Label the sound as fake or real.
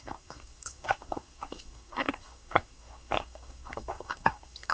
fake